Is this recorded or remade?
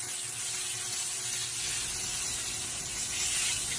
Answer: recorded